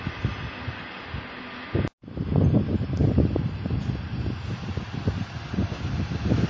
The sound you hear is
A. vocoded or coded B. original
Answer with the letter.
B